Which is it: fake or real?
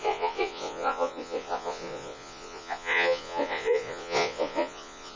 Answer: fake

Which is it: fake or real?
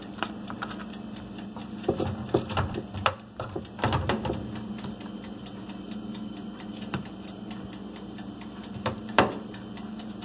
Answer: fake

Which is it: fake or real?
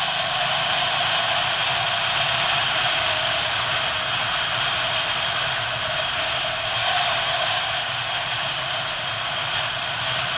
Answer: real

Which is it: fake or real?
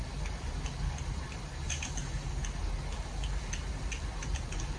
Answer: real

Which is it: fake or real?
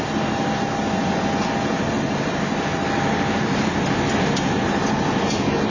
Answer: real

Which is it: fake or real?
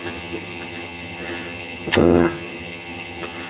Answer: fake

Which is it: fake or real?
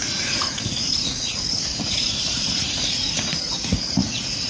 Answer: fake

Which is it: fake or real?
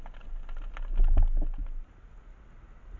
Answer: real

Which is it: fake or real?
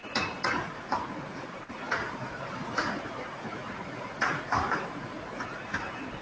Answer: fake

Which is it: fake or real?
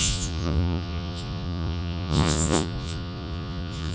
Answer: fake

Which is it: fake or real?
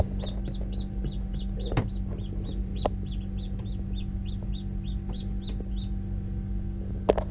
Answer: real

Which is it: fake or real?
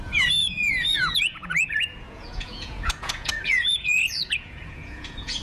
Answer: fake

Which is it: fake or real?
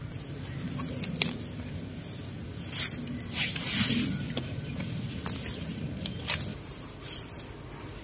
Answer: real